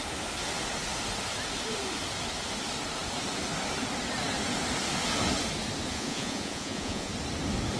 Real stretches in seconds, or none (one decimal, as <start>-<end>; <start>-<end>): 0.0-5.9; 7.1-7.8